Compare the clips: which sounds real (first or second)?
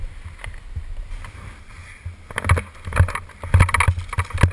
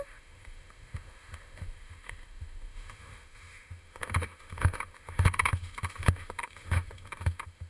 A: first